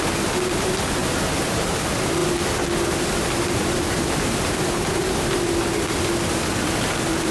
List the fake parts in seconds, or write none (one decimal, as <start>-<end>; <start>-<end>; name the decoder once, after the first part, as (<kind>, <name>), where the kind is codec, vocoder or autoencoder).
1.0-1.7 (vocoder, BigVGAN v2)